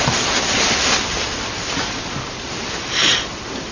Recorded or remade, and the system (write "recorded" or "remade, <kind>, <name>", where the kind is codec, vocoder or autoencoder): recorded